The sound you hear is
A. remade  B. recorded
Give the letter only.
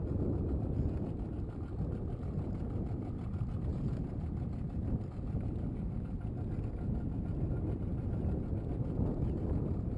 B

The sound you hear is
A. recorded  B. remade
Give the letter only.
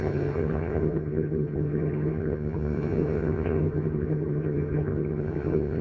B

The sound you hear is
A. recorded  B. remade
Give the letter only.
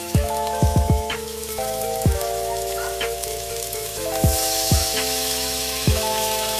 B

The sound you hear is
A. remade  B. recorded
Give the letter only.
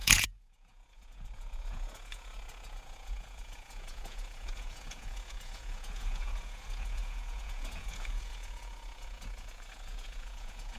A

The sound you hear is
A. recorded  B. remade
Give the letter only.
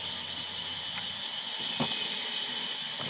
A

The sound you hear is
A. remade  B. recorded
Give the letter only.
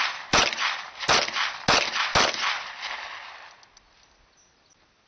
B